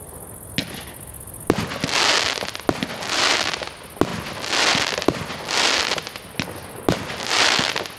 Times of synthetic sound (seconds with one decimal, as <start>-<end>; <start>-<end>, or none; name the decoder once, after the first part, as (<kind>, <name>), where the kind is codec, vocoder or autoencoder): none

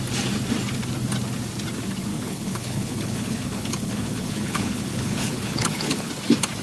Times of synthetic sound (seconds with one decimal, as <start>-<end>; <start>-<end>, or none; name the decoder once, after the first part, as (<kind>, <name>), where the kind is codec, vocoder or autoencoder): 2.1-6.1 (codec, HILCodec)

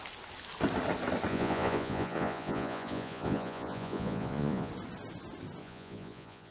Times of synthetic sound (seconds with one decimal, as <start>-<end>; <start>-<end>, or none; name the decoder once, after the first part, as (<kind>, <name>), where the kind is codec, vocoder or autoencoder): 1.3-4.7 (vocoder, Vocos); 5.6-6.5